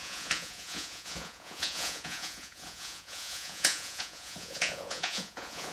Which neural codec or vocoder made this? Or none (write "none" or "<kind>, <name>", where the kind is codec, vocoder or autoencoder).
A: vocoder, Vocos